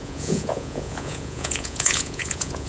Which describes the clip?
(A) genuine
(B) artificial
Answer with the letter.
B